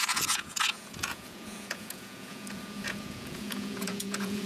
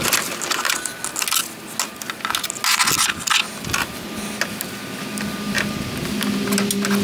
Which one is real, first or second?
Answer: second